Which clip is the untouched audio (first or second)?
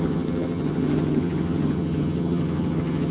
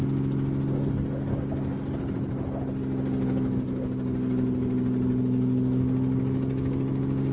second